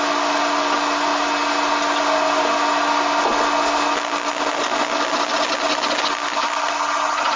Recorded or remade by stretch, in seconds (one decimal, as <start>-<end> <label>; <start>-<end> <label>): 0.0-7.4 recorded